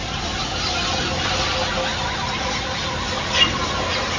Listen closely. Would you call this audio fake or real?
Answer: real